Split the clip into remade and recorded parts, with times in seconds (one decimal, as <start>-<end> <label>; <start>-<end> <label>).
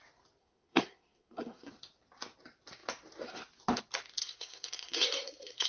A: 0.0-0.4 recorded; 0.4-1.7 remade; 1.7-4.2 recorded; 4.2-5.7 remade